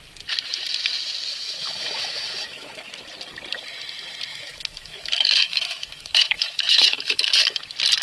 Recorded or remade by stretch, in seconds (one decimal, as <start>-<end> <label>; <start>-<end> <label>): 0.0-1.3 recorded; 1.3-2.9 remade; 2.9-4.3 recorded; 4.3-7.6 remade; 7.6-8.0 recorded